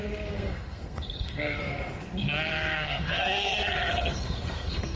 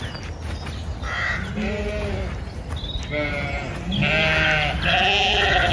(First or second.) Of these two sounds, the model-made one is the first